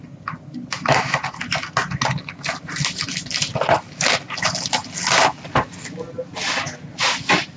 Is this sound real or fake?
real